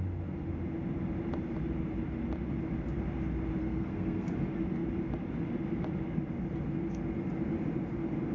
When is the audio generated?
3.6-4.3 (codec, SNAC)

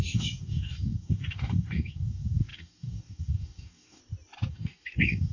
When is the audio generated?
0.0-4.0 (codec, DAC); 4.5-5.3

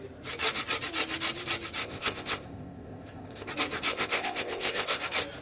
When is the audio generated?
1.8-3.5 (codec, ZipCodec); 3.9-5.0

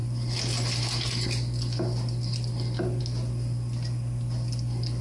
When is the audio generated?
none